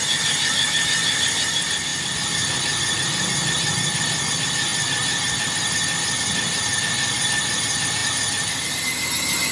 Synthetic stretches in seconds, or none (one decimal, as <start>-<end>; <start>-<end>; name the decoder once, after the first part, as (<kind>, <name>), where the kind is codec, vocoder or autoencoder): none